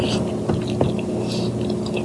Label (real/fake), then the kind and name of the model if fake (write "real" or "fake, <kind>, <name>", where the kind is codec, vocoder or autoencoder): real